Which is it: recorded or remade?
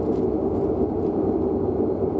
recorded